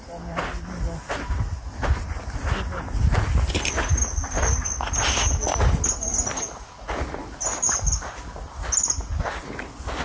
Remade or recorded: recorded